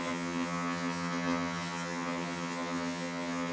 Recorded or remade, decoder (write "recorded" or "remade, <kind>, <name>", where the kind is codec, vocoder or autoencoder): remade, vocoder, HiFi-GAN